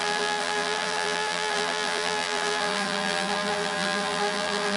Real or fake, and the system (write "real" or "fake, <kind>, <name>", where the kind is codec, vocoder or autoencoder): fake, vocoder, BigVGAN v2